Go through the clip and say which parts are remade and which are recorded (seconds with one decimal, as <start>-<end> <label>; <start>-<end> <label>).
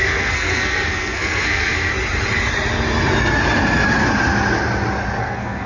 0.0-1.9 remade; 1.9-5.2 recorded; 5.2-5.7 remade